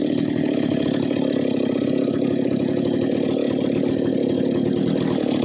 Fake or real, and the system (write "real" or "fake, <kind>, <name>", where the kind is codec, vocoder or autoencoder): real